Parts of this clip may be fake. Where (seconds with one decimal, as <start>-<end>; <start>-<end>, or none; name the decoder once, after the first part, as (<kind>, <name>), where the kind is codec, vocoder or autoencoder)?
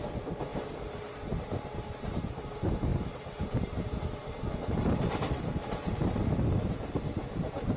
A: none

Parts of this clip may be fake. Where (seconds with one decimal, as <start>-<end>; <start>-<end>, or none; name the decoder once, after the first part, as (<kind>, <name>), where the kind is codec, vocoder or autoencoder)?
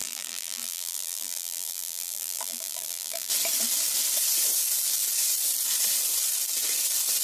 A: 0.0-3.3 (vocoder, BigVGAN v2)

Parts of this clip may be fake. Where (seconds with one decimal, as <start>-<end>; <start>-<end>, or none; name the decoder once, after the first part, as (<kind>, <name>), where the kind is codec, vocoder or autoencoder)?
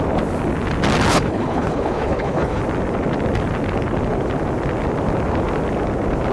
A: 1.1-2.6 (codec, HILCodec)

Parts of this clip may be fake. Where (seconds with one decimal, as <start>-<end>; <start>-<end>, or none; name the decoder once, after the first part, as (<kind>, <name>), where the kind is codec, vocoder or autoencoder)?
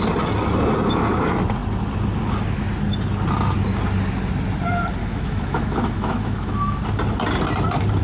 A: 5.0-6.8 (autoencoder, DAC-VAE)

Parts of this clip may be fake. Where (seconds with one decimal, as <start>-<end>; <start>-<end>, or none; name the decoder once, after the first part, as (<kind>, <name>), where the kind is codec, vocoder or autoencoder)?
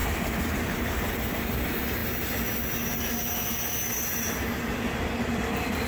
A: none